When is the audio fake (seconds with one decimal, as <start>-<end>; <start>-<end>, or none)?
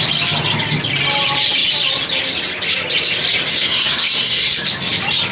3.5-4.6